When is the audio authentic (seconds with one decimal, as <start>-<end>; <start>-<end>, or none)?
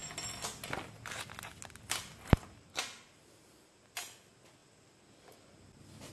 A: 0.0-6.1